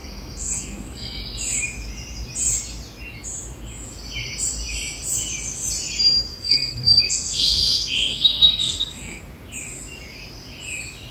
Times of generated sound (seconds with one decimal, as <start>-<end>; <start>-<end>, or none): 0.0-1.2; 6.3-9.2